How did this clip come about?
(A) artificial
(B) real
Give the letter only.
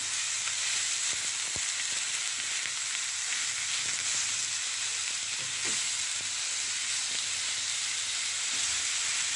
B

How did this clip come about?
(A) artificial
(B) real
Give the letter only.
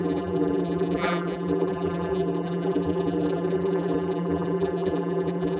A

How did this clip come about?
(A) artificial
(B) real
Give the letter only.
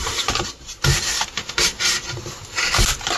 B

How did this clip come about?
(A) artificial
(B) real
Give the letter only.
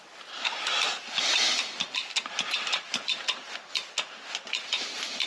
B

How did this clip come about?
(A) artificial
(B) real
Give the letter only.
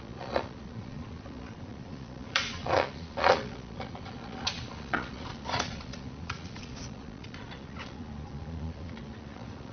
A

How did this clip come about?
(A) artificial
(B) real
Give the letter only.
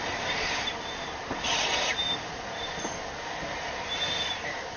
A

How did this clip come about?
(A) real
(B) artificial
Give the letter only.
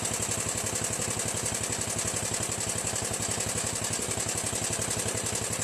A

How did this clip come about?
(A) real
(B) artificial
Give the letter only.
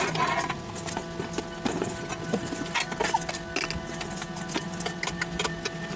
A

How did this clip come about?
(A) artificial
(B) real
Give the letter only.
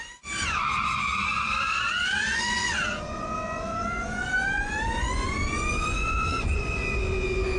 A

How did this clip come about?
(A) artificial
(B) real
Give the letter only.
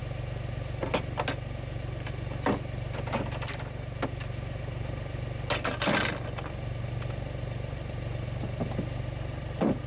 B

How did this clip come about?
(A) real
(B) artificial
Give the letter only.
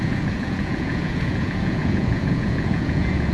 B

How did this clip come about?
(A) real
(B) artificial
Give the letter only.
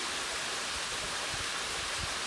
A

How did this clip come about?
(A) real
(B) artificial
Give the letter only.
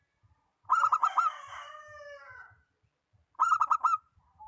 A